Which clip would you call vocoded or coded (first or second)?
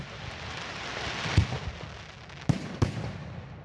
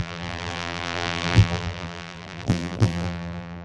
second